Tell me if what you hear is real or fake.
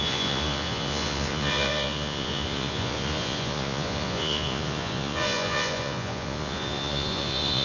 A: fake